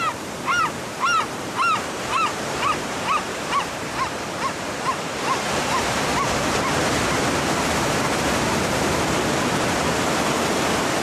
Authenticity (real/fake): fake